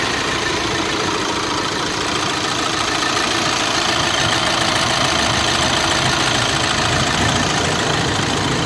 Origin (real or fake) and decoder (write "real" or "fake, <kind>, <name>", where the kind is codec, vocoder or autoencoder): fake, vocoder, BigVGAN v2